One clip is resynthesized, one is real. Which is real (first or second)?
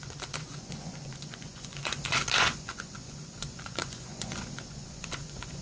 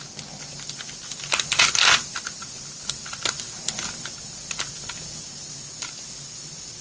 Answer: second